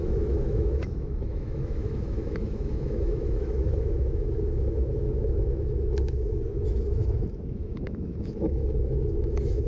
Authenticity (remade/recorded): remade